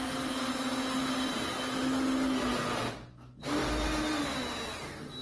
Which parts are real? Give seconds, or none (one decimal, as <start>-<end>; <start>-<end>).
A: 0.0-5.2